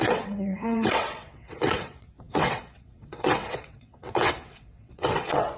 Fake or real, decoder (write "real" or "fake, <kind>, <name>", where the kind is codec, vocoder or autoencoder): fake, vocoder, WaveNeXt